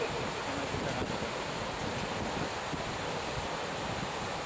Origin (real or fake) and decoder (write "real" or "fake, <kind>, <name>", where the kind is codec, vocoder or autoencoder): real